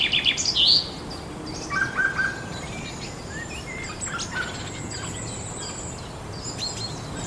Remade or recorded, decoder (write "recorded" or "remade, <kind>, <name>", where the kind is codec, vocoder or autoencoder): recorded